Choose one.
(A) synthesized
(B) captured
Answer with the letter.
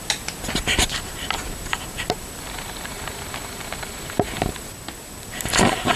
A